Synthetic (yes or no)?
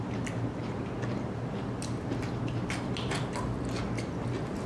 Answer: no